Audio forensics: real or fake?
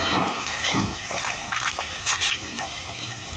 fake